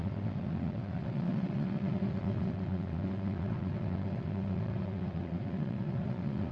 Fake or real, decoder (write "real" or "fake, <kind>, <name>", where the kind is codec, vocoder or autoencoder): fake, vocoder, WaveNeXt